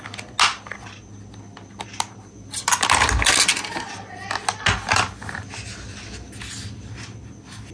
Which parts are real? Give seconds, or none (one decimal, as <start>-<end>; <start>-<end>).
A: 0.0-7.7